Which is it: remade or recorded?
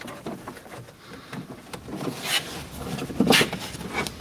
recorded